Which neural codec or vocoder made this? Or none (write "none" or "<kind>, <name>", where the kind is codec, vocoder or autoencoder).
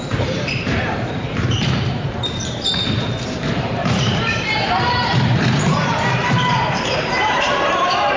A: vocoder, BigVGAN v2